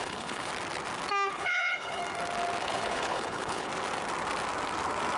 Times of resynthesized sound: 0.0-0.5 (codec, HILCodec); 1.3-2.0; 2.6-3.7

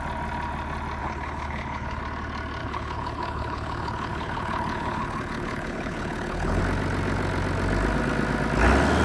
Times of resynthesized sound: 1.0-2.0 (codec, HILCodec); 2.6-6.6